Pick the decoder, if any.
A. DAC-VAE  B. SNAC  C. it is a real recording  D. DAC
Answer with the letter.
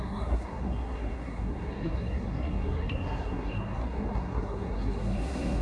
B